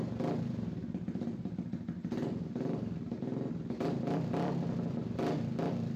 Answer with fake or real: real